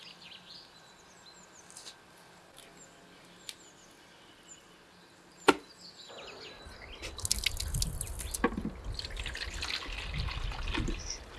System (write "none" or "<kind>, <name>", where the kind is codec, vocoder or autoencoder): none